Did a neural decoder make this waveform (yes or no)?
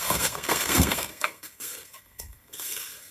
yes